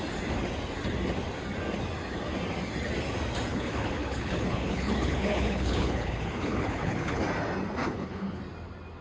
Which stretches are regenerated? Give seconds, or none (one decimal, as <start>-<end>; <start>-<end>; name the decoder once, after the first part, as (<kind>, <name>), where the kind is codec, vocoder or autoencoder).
3.5-7.2 (codec, HILCodec); 7.8-8.4